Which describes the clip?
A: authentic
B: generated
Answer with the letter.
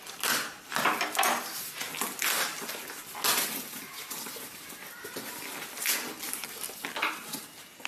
A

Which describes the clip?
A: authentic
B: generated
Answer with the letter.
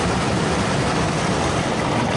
B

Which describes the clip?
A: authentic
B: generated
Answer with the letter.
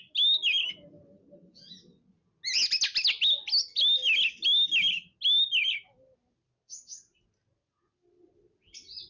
A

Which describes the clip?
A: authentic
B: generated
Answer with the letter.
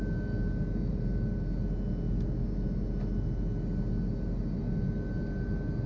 A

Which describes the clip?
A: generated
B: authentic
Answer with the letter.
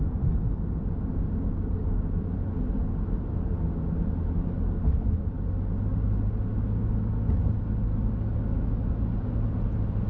B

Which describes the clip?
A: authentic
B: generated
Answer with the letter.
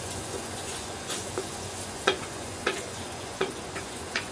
B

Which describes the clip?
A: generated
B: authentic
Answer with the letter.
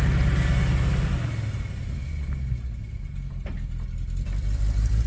B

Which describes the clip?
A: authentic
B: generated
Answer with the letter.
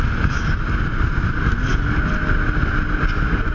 A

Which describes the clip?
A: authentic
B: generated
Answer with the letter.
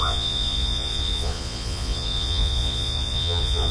B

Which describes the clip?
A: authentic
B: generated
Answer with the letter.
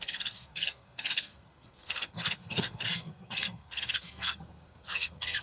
B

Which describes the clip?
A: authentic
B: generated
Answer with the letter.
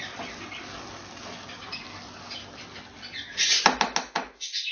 A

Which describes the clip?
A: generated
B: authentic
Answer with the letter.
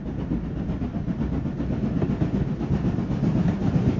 B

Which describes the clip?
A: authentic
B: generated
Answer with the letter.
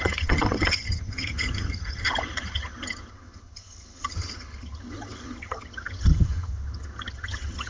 B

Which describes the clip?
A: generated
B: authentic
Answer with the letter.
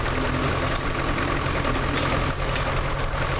B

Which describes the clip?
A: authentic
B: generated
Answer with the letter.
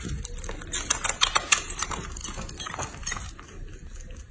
A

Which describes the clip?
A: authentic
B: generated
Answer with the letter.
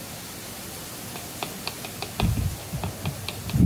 A